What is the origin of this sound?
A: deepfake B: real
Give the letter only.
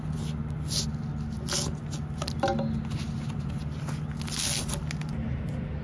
B